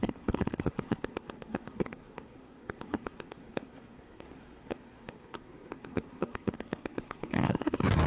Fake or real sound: fake